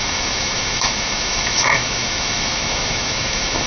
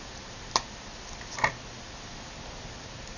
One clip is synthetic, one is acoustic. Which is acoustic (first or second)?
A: second